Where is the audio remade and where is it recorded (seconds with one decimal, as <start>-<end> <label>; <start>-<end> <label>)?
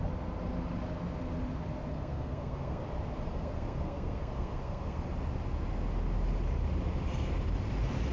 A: 0.0-1.9 recorded; 1.9-2.8 remade; 2.8-3.3 recorded; 3.3-5.0 remade; 5.0-8.1 recorded